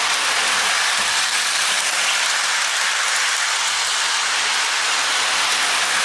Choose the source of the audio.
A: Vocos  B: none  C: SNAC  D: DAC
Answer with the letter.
B